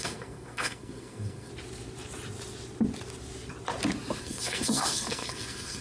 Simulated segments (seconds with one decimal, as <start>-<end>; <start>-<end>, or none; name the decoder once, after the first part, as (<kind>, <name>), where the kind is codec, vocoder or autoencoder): 0.0-1.5 (codec, SNAC); 4.2-5.8